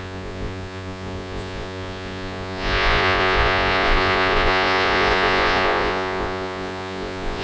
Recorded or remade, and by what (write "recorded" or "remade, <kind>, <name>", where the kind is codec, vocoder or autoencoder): remade, vocoder, Vocos